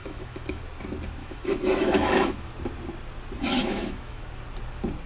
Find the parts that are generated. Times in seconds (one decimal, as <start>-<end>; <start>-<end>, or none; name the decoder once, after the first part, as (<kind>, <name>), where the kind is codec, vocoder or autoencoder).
0.0-0.6 (autoencoder, DAC-VAE); 1.2-2.5; 3.6-4.2